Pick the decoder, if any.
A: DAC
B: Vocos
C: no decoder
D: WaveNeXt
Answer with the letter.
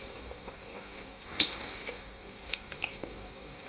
A